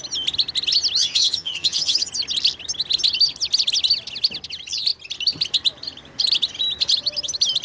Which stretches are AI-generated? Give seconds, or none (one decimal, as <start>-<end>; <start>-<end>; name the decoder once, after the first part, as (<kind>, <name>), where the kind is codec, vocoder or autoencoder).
1.0-2.1 (vocoder, HiFi-GAN)